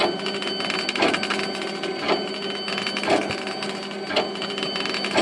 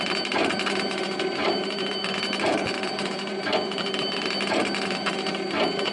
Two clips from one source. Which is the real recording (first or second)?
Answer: first